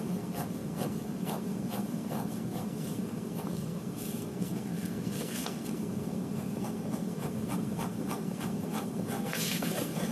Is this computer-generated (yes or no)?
yes